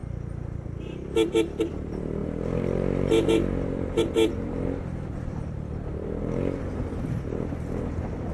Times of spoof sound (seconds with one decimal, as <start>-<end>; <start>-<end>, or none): 1.7-8.3